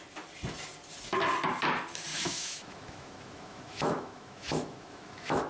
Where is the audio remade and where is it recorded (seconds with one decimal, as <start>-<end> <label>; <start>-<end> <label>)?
0.0-2.1 recorded; 2.1-5.5 remade